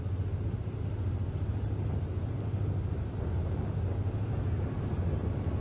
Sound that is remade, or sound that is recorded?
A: recorded